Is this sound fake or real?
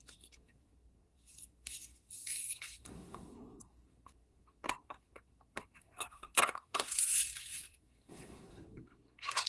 fake